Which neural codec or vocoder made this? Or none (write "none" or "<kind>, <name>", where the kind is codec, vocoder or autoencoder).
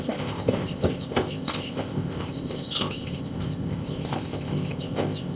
codec, ZipCodec